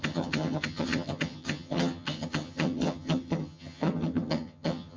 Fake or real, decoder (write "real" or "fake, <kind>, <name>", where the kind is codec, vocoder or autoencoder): fake, vocoder, HiFi-GAN